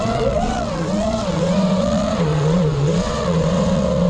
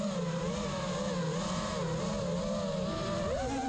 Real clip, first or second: second